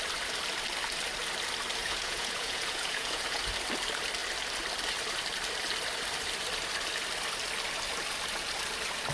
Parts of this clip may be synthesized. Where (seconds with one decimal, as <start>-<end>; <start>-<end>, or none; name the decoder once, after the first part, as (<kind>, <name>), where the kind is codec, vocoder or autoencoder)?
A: 1.8-3.4 (vocoder, Vocos)

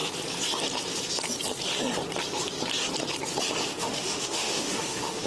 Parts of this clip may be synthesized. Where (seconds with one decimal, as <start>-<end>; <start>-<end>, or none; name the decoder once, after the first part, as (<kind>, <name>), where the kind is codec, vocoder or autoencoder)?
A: 3.7-5.3 (autoencoder, DAC-VAE)